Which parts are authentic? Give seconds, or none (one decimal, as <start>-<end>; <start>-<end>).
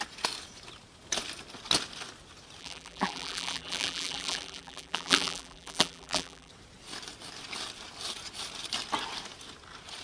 0.0-2.6; 6.5-10.0